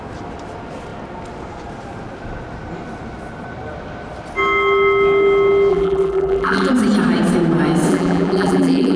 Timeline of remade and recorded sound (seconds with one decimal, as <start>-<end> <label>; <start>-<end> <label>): 0.0-5.7 recorded; 5.7-6.7 remade; 6.7-7.9 recorded; 7.9-9.0 remade